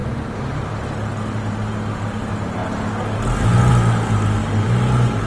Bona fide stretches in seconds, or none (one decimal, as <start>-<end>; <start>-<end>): 0.7-5.3